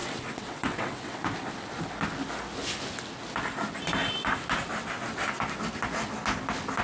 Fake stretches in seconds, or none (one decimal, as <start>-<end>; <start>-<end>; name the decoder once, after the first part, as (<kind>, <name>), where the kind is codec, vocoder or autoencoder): 0.0-1.2 (vocoder, WaveNeXt)